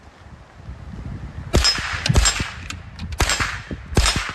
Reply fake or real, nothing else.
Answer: real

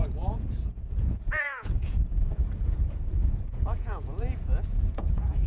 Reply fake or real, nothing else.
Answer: fake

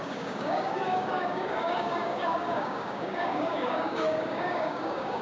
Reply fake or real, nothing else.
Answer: fake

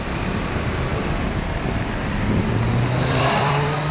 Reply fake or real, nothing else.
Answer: fake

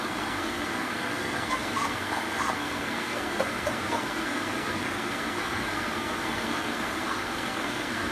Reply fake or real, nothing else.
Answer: fake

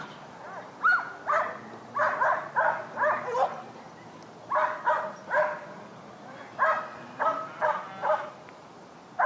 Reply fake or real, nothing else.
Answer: real